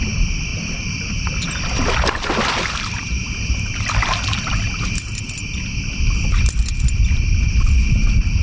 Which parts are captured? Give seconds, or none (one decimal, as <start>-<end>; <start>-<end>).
0.0-8.4